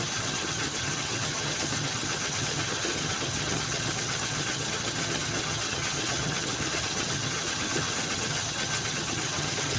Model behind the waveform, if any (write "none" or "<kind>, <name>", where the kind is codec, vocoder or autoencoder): vocoder, HiFi-GAN